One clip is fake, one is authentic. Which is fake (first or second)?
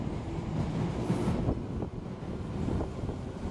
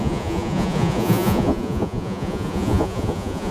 second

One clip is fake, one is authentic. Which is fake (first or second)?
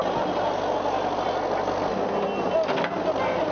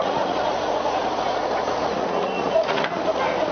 second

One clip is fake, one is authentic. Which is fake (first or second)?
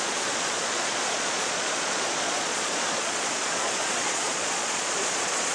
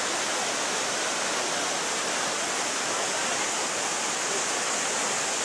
first